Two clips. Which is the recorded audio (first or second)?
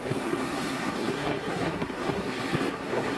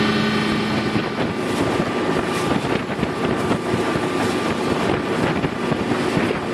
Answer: second